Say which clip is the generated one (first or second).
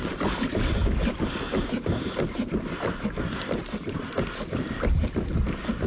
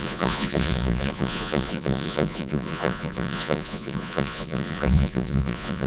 second